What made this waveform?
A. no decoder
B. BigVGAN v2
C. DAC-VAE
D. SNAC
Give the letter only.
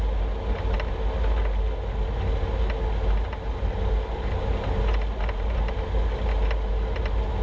A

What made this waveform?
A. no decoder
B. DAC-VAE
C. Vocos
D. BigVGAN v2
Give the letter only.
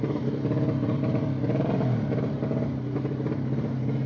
A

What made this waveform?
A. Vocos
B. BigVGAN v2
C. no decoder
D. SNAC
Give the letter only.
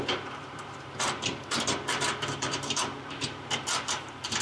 B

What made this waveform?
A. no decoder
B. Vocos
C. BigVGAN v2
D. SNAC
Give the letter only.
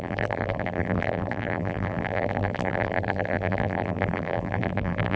C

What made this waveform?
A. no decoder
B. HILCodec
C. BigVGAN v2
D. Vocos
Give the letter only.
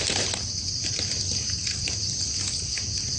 A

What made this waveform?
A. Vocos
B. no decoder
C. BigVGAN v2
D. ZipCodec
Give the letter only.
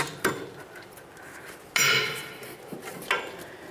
B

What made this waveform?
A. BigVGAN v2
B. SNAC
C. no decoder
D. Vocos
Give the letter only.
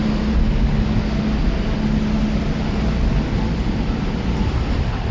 C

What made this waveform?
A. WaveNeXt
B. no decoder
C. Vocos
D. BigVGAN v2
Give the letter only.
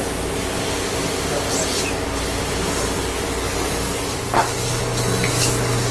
B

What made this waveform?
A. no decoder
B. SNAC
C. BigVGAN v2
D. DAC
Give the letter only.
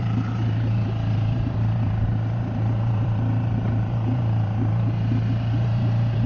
C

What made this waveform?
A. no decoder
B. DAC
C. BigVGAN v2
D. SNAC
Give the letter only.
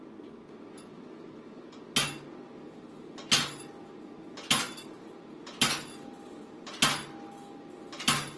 A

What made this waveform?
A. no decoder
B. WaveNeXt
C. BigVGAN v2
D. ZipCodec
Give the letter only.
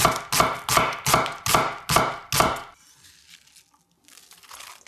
A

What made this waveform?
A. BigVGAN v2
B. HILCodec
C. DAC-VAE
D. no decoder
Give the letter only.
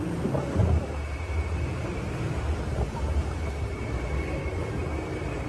D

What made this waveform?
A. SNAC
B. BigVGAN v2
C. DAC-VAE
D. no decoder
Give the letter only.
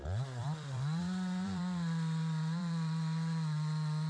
B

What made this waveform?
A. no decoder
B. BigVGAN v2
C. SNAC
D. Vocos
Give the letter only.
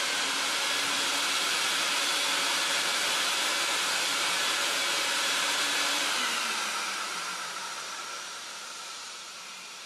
B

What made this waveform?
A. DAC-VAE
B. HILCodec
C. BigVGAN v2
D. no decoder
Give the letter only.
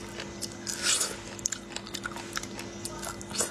D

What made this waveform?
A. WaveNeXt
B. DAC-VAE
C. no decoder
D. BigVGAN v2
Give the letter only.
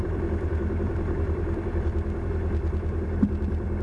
D